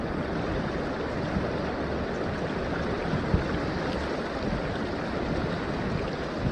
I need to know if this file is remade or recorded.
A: recorded